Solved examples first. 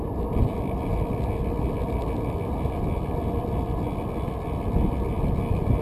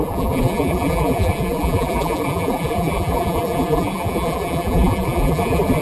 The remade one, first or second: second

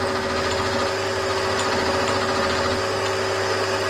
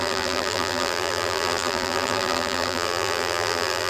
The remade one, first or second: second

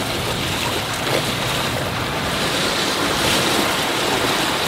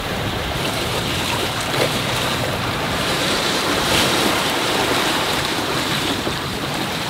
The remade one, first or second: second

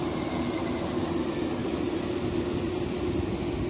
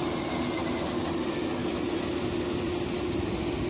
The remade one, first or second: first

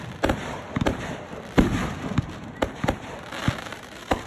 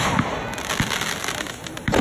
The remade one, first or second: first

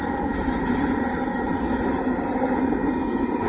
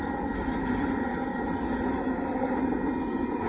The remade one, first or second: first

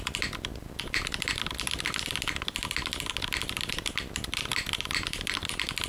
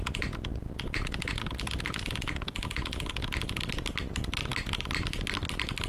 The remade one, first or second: first